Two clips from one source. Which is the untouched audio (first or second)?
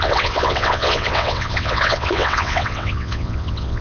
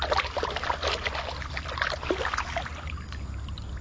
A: second